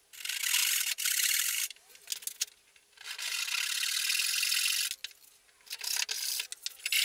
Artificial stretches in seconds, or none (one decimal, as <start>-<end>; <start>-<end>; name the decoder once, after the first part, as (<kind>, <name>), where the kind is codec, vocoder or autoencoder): 0.6-1.9 (vocoder, BigVGAN v2); 2.7-3.4